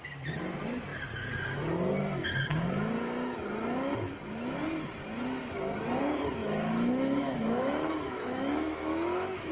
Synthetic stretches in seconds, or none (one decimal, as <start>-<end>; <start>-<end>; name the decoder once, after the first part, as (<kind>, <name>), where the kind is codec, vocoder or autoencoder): 6.4-9.5 (autoencoder, DAC-VAE)